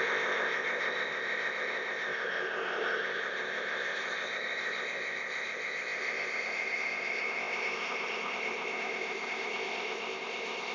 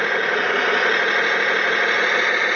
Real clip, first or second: second